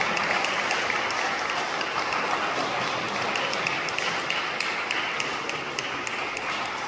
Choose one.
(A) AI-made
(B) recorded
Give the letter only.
B